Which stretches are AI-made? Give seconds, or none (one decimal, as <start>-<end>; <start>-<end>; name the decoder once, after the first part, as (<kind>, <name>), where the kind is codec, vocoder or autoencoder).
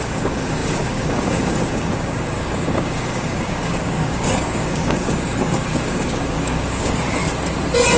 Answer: 0.0-7.2 (codec, DAC)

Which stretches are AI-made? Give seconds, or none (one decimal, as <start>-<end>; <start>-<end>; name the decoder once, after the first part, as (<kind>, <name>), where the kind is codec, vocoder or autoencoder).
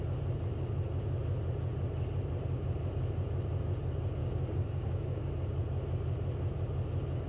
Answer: 4.2-5.3 (codec, DAC)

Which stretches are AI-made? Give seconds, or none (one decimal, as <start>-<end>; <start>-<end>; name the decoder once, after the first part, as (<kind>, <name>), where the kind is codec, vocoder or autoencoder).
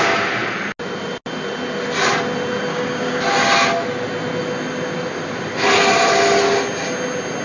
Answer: 2.7-3.2 (codec, DAC)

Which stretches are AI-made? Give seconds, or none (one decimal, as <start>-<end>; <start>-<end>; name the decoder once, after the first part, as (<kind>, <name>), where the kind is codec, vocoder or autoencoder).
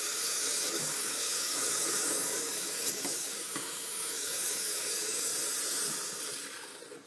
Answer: 0.0-5.3 (codec, DAC)